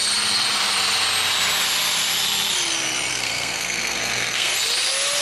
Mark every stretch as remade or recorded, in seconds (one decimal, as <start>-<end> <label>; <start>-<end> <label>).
0.0-3.1 recorded; 3.1-4.5 remade; 4.5-5.2 recorded